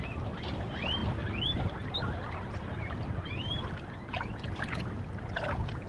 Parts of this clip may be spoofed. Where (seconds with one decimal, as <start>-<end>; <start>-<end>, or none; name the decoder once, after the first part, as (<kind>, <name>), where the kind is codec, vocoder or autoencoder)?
none